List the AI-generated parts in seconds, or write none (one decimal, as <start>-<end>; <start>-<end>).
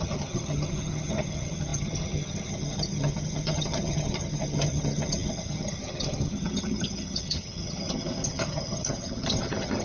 0.0-9.8